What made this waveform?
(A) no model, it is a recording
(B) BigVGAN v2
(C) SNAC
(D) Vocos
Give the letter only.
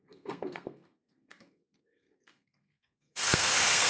C